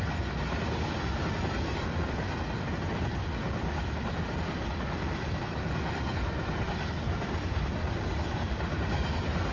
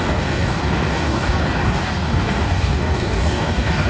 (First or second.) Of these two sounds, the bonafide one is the first